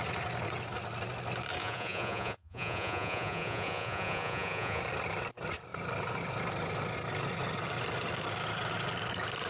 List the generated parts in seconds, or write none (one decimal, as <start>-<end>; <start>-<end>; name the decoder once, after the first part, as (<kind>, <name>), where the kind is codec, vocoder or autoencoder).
1.6-4.8 (vocoder, Vocos)